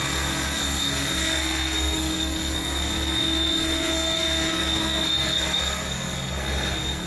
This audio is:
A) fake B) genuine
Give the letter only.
A